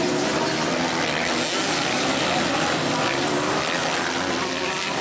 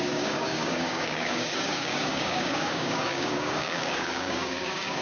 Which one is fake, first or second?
second